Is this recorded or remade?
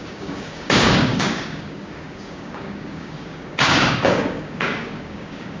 remade